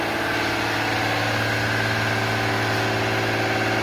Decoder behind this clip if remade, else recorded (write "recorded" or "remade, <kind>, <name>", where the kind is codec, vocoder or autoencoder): recorded